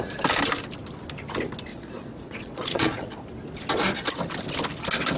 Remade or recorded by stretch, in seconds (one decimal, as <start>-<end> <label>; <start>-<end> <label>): 0.0-1.7 recorded; 1.7-3.2 remade; 3.2-5.2 recorded